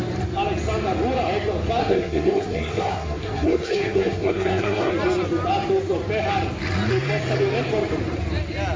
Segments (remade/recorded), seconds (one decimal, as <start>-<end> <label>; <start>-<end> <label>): 0.0-1.8 recorded; 1.8-4.9 remade; 4.9-8.8 recorded

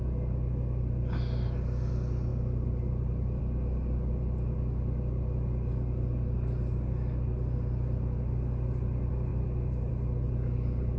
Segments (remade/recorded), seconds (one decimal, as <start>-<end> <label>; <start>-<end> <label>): 0.0-2.3 recorded; 2.3-3.4 remade; 3.4-9.3 recorded; 9.3-9.9 remade; 9.9-11.0 recorded